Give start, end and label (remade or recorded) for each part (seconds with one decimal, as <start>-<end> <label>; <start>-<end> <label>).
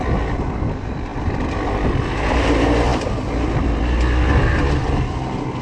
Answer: 0.0-5.6 recorded